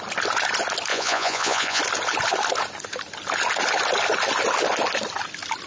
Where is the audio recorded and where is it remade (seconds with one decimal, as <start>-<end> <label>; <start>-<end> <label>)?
0.0-0.9 recorded; 0.9-1.8 remade; 1.8-5.7 recorded